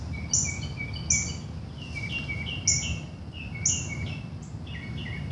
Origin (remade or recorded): recorded